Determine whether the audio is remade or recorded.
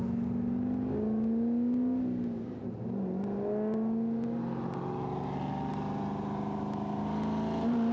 recorded